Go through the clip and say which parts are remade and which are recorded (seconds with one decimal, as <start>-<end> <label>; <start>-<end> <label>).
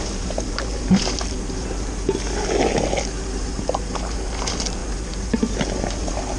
0.0-6.4 recorded